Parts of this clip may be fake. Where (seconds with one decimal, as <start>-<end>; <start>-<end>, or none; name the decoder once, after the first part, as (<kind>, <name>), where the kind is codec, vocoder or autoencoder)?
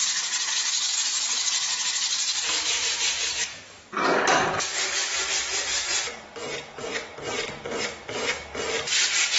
3.2-5.1 (codec, DAC)